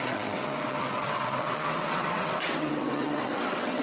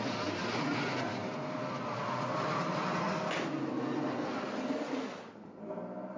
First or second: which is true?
second